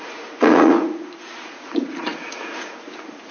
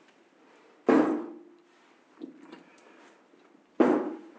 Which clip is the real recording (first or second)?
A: second